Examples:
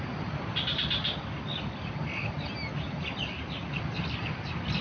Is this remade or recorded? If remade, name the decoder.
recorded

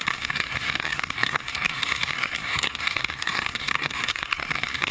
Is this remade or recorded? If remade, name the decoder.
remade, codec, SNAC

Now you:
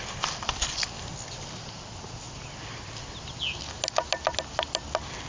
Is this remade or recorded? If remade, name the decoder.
recorded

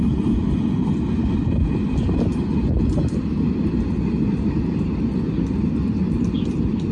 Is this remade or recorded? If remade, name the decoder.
recorded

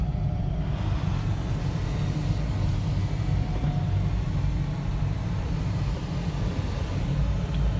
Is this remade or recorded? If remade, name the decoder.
recorded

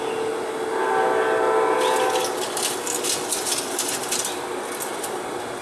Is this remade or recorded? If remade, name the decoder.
recorded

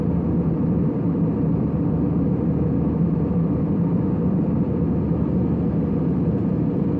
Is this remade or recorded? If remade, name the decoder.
recorded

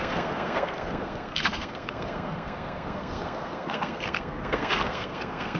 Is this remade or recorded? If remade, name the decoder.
remade, codec, SNAC